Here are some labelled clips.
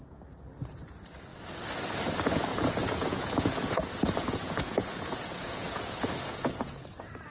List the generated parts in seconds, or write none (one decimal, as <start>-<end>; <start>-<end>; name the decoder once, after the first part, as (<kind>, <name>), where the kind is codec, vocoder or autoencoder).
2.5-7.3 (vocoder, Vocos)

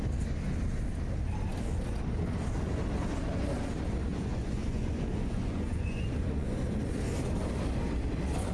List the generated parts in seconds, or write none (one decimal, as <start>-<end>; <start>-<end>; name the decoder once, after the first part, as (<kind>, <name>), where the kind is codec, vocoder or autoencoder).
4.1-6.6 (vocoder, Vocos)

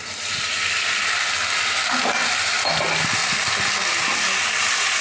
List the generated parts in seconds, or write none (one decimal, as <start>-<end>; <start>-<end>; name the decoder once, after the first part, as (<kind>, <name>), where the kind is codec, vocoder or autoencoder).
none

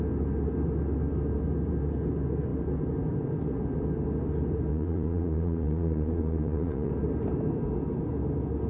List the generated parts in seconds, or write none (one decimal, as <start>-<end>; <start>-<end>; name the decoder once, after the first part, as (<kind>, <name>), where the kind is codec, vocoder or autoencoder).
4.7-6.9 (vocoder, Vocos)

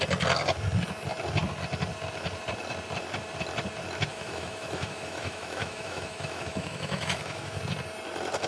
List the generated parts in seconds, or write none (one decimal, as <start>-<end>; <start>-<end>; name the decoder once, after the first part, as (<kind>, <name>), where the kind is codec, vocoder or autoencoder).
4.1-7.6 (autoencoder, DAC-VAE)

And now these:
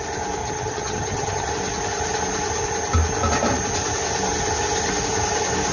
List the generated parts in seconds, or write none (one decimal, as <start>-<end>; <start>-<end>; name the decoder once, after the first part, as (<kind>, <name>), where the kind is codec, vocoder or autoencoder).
0.4-1.5 (vocoder, HiFi-GAN)